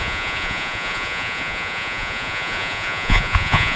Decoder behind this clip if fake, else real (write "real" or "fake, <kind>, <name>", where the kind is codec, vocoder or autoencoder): fake, vocoder, Vocos